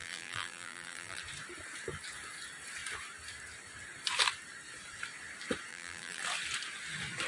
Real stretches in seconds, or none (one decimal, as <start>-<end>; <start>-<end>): 1.2-5.7; 6.2-7.3